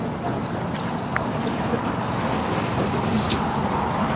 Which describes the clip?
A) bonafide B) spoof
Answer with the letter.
A